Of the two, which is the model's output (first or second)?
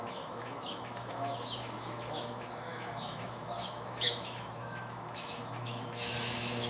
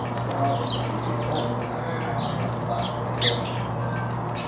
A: first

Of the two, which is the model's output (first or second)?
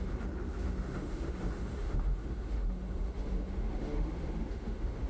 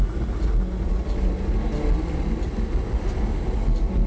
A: first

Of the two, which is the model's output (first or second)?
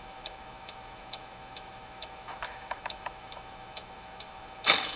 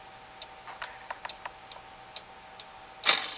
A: first